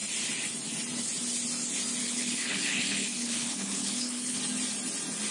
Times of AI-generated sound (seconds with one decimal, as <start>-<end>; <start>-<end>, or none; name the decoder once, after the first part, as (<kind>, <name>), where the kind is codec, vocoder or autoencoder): 2.0-4.4 (codec, HILCodec)